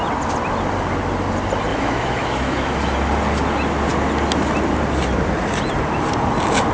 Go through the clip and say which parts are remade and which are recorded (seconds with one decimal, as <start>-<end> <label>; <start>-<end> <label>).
0.0-1.7 recorded; 1.7-2.8 remade; 2.8-6.7 recorded